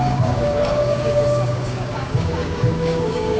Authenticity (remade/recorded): remade